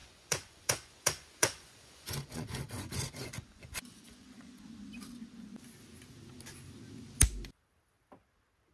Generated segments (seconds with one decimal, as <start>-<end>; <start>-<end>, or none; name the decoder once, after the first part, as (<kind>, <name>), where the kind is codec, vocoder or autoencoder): 0.0-4.6 (vocoder, Vocos)